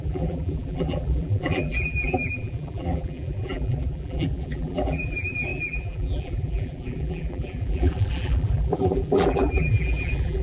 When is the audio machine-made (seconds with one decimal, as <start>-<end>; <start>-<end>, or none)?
0.0-10.4